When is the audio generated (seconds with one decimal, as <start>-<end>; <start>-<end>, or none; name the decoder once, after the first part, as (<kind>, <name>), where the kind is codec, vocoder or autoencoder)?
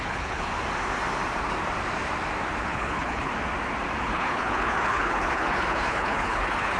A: 0.0-0.5 (codec, HILCodec); 2.6-3.3; 4.0-6.8